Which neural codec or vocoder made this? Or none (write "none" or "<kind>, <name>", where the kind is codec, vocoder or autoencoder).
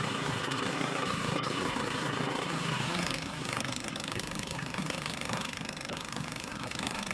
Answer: codec, SNAC